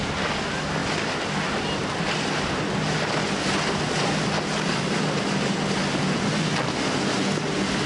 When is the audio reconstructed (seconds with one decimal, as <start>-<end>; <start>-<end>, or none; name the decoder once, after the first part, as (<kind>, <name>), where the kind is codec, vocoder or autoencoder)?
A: none